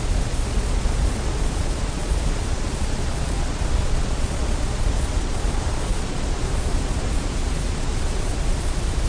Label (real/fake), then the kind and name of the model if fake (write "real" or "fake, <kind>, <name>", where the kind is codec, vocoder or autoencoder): fake, vocoder, Vocos